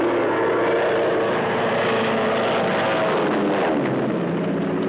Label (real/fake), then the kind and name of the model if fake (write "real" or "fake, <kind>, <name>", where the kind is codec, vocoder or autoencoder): real